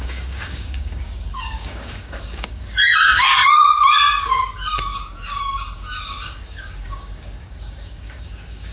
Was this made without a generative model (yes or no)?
no